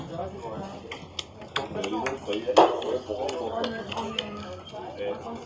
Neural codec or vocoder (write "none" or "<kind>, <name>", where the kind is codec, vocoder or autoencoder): none